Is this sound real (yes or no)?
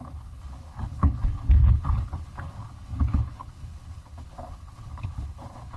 no